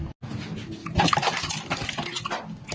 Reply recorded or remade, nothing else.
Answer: recorded